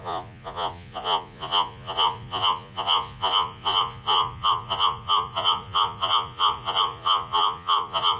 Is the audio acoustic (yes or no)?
no